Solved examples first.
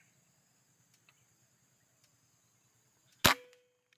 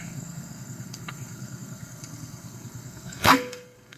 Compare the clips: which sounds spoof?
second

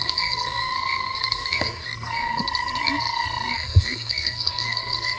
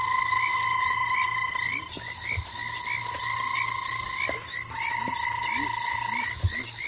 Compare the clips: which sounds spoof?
first